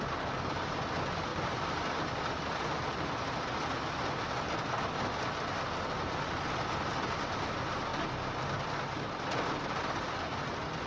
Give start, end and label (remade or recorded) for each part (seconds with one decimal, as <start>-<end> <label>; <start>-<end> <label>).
0.0-10.9 recorded